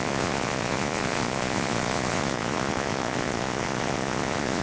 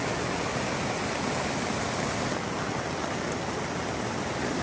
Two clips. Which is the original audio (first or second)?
second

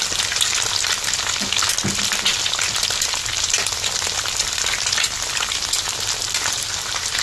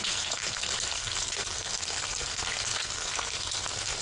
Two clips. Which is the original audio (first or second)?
first